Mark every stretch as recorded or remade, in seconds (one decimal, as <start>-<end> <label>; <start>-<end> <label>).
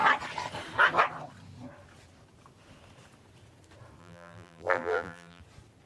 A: 0.0-4.0 recorded; 4.0-5.4 remade; 5.4-5.9 recorded